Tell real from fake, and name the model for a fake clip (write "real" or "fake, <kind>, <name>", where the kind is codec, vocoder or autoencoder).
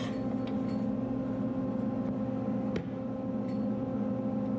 real